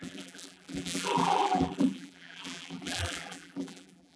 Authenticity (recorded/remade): remade